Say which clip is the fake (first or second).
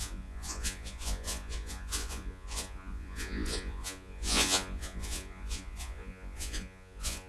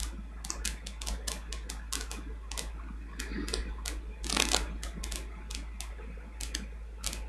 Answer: first